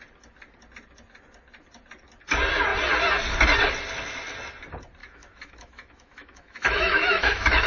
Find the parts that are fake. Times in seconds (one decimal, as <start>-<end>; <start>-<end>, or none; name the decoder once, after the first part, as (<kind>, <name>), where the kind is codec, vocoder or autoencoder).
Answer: 5.0-7.7 (autoencoder, DAC-VAE)